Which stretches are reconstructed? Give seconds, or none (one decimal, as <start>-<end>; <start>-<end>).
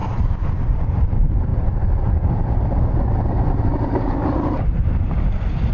0.0-5.7